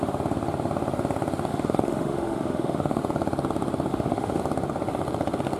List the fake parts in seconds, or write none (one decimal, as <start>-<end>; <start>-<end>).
1.5-3.0; 3.9-4.4